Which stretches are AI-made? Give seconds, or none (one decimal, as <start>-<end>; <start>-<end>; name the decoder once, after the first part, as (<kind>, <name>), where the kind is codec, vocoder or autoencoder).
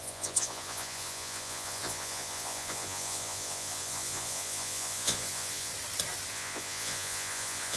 0.0-5.7 (vocoder, Vocos); 6.3-7.8